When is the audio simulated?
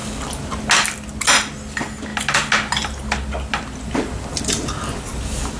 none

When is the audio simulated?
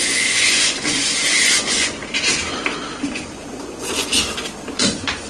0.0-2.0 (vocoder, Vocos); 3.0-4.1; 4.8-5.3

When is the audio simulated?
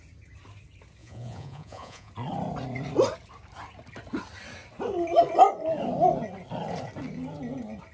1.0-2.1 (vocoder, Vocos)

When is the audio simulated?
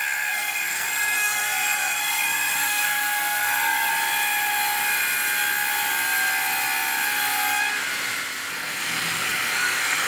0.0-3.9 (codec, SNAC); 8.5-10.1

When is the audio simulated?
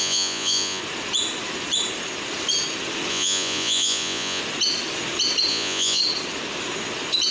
0.0-0.8 (vocoder, Vocos); 3.1-4.4; 5.5-6.0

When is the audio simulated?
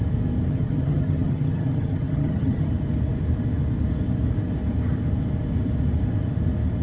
0.5-2.7 (vocoder, HiFi-GAN)